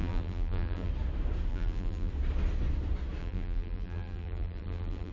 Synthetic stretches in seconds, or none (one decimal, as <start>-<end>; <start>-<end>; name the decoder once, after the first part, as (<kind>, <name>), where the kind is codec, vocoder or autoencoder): 0.0-0.9 (vocoder, BigVGAN v2); 1.5-2.1; 3.2-5.1